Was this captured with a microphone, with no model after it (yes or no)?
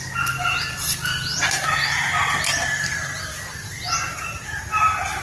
yes